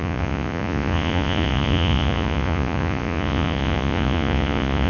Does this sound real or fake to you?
fake